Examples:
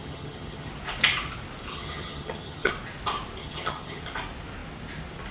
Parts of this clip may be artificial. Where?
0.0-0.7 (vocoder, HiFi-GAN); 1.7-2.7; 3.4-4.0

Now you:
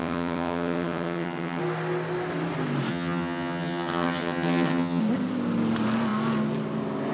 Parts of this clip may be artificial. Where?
0.0-1.6 (vocoder, HiFi-GAN); 2.9-5.0

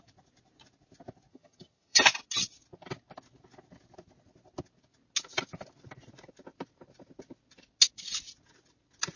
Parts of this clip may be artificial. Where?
1.3-2.0 (vocoder, HiFi-GAN)